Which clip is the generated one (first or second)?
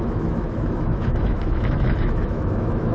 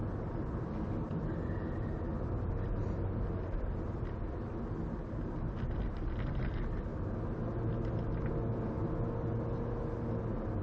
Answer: first